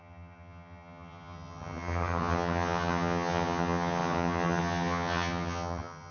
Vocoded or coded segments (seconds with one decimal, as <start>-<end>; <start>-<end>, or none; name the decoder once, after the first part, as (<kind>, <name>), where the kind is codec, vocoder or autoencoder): 0.0-6.1 (vocoder, HiFi-GAN)